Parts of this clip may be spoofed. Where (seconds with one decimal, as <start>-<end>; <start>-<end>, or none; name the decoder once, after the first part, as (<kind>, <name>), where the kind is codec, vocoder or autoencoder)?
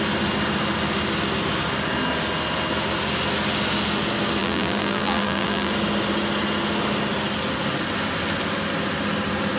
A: 4.4-5.7 (vocoder, BigVGAN v2)